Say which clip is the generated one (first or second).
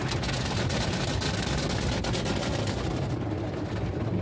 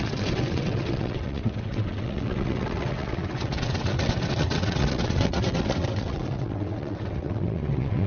second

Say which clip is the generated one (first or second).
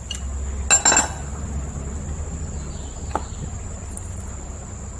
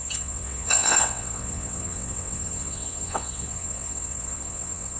second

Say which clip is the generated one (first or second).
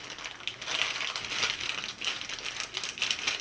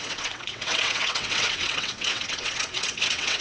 second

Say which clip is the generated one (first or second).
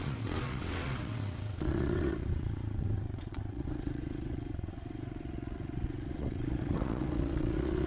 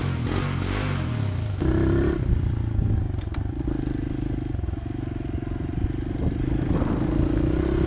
first